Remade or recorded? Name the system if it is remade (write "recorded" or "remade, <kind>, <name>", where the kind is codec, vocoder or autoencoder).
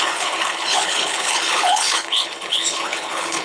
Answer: remade, codec, HILCodec